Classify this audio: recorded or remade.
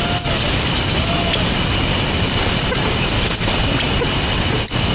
recorded